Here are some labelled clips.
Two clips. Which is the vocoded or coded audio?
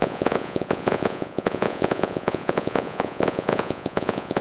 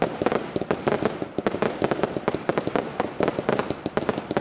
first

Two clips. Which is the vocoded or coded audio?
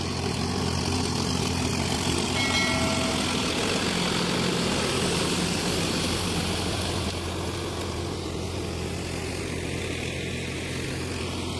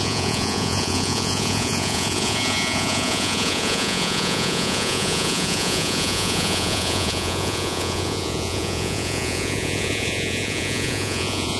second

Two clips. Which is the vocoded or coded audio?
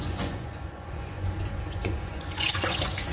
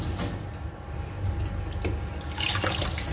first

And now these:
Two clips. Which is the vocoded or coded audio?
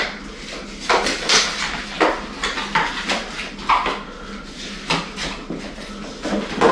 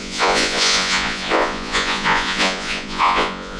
second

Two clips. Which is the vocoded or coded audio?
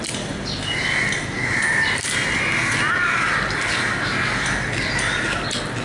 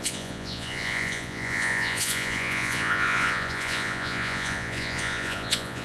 second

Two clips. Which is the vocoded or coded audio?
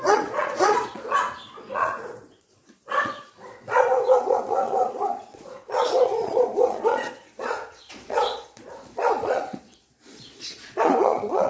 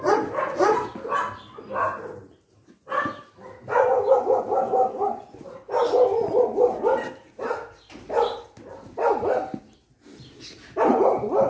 first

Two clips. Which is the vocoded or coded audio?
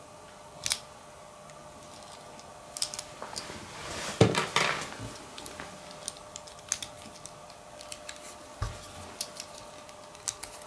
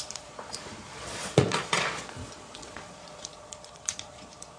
second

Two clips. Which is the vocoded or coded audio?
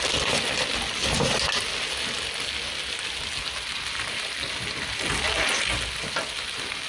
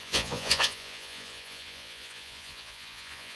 second